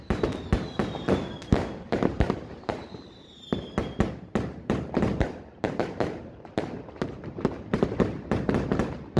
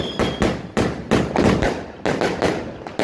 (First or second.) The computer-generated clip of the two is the first